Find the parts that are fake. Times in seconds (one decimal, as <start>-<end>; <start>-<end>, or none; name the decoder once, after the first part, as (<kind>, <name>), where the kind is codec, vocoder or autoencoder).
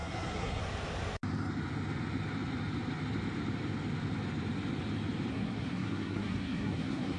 0.0-0.6 (codec, SNAC); 5.3-7.2